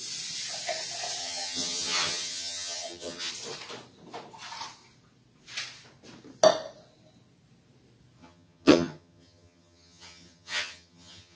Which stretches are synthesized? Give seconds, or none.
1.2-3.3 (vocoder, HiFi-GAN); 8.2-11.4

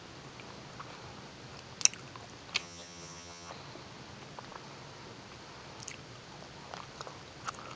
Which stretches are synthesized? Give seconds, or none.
2.6-3.5 (vocoder, HiFi-GAN)

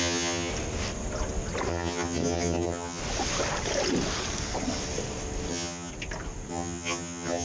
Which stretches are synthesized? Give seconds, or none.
0.0-0.5 (vocoder, HiFi-GAN); 1.7-3.0; 5.5-5.9; 6.5-7.4

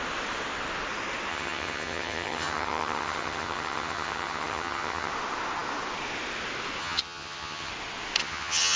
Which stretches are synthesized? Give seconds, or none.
1.3-5.1 (vocoder, HiFi-GAN); 6.8-7.7; 8.2-8.8

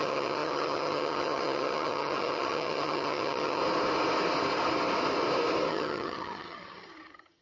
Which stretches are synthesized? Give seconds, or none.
0.0-3.6 (vocoder, HiFi-GAN); 5.7-7.4